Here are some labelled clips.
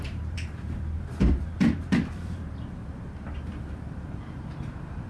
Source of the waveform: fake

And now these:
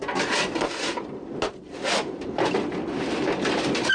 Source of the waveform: real